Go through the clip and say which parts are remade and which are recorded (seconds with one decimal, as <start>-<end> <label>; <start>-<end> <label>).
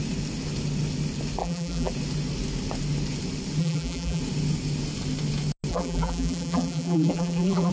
0.0-1.4 recorded; 1.4-1.9 remade; 1.9-3.6 recorded; 3.6-4.2 remade; 4.2-5.7 recorded; 5.7-7.7 remade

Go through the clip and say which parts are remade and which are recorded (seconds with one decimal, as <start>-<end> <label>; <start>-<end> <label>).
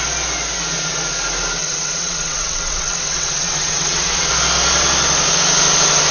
0.0-1.6 recorded; 1.6-4.3 remade; 4.3-6.1 recorded